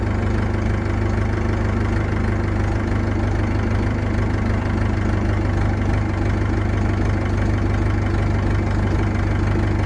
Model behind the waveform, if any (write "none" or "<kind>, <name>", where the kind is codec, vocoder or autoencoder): none